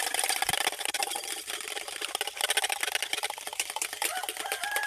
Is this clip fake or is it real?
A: real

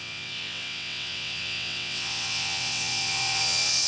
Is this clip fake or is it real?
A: fake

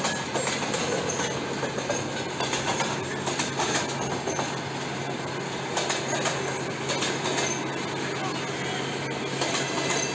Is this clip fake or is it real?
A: real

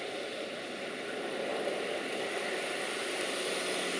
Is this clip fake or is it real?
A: real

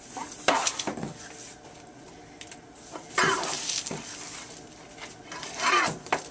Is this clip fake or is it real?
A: real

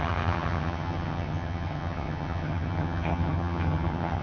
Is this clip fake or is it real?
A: fake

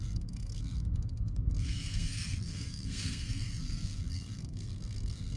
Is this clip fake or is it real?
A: fake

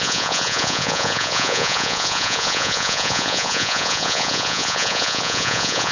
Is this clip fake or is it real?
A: fake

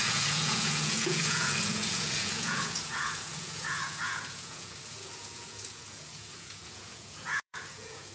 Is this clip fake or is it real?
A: fake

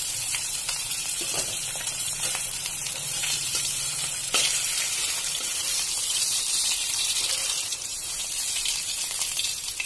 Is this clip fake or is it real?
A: fake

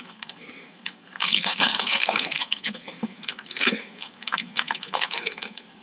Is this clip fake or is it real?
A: fake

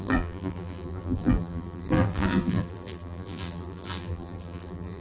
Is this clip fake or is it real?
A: fake